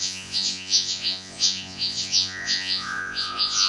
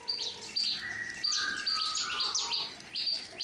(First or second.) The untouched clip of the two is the second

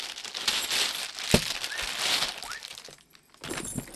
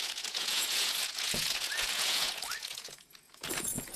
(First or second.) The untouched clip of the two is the first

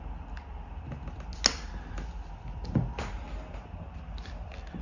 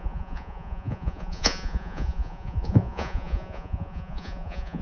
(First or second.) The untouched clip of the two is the first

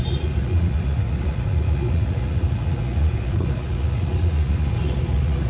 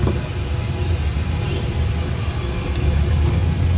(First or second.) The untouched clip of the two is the second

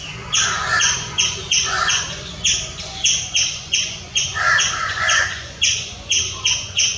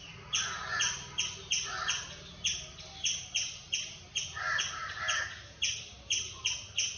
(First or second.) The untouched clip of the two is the second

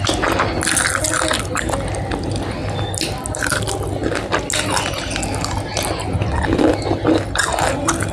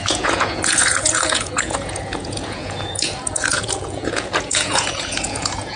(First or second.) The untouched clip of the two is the first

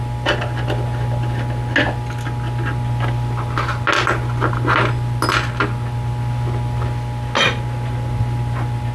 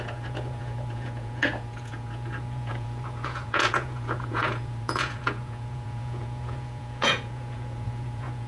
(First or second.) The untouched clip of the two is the first